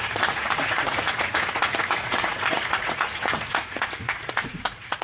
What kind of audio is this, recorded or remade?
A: remade